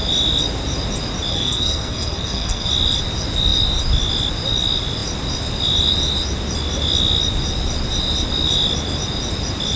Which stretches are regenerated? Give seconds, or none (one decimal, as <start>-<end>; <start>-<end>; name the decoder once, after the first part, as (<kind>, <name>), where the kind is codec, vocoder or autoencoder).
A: 1.3-2.7 (codec, SNAC)